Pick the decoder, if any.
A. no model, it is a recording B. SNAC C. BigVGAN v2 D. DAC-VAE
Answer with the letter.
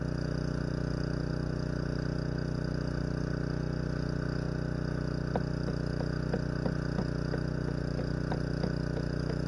A